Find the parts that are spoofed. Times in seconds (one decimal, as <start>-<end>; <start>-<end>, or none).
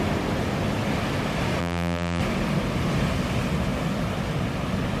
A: 1.6-2.2